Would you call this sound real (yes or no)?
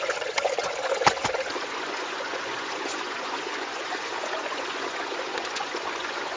no